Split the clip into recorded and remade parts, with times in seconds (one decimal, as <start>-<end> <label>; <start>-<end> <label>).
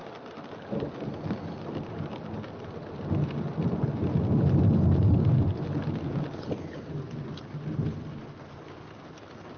0.0-9.6 recorded